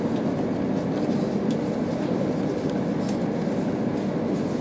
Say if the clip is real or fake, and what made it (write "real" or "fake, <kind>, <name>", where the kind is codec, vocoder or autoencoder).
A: real